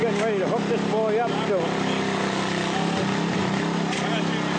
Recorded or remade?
recorded